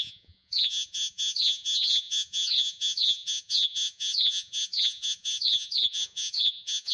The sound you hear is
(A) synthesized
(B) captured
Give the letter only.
A